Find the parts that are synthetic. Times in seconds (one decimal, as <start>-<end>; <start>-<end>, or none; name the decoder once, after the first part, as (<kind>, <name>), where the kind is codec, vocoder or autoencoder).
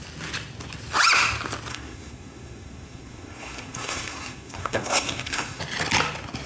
1.7-5.6 (codec, SNAC)